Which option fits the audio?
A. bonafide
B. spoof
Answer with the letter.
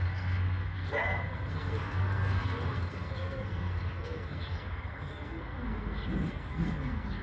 B